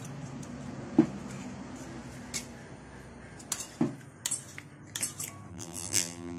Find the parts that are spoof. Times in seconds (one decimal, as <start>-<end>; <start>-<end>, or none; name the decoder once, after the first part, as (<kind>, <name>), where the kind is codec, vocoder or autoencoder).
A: 5.5-6.4 (vocoder, BigVGAN v2)